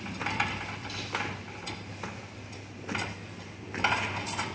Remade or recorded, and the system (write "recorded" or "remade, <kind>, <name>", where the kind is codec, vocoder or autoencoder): recorded